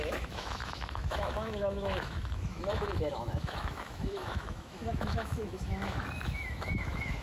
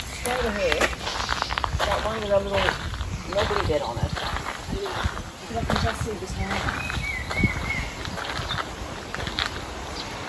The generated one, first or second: first